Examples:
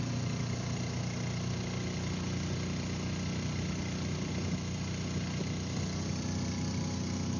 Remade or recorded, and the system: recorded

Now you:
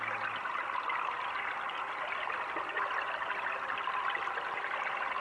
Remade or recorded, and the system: recorded